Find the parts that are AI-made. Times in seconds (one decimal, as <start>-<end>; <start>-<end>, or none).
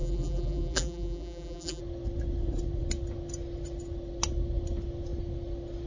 0.0-1.8